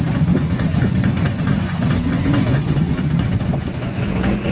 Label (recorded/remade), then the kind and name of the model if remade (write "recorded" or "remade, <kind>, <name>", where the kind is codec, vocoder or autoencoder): remade, vocoder, Vocos